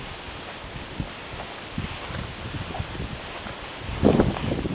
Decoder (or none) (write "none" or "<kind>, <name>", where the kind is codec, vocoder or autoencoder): none